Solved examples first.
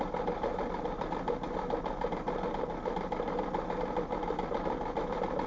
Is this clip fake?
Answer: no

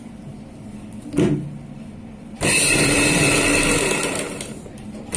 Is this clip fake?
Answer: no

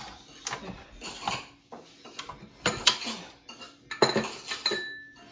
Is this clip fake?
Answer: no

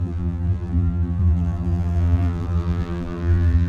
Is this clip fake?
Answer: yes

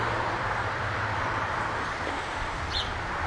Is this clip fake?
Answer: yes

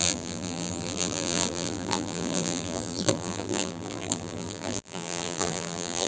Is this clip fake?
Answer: yes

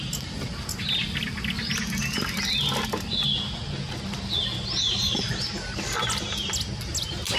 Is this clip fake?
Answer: no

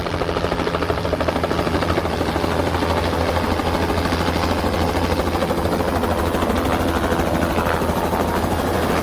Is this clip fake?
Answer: no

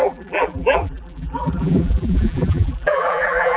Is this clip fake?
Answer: yes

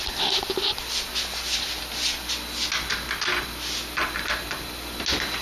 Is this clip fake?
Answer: no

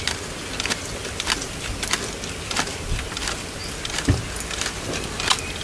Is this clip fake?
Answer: no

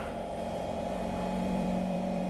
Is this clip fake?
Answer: yes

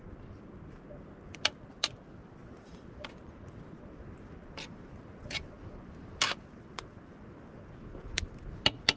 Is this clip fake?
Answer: no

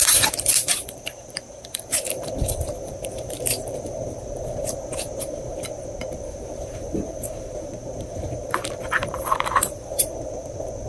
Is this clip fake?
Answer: yes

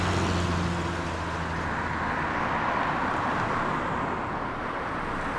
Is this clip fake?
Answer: no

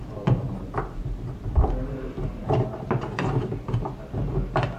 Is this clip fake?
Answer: yes